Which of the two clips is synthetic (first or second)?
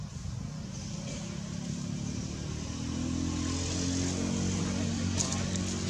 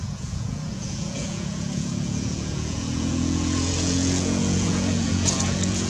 second